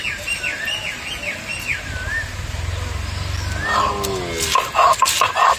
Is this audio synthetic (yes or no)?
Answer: no